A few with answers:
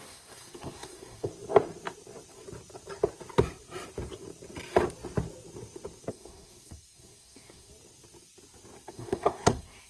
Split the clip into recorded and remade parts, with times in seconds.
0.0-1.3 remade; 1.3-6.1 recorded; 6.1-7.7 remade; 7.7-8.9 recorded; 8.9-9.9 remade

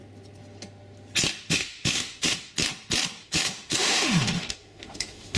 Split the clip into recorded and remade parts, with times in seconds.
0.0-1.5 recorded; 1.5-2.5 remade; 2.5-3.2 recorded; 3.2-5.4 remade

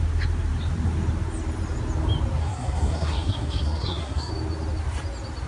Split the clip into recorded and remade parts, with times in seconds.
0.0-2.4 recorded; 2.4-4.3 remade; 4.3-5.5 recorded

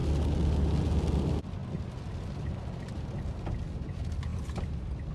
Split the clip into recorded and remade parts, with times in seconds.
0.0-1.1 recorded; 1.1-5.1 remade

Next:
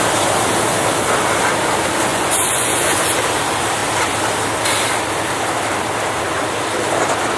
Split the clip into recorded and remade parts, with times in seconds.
0.0-2.1 recorded; 2.1-3.0 remade; 3.0-7.4 recorded

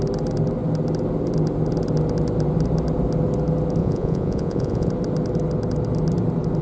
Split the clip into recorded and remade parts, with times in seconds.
0.0-3.8 recorded; 3.8-4.9 remade; 4.9-6.6 recorded

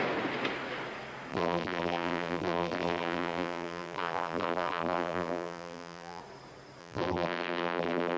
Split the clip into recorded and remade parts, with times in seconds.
0.0-1.3 recorded; 1.3-6.2 remade; 6.2-6.8 recorded; 6.8-8.2 remade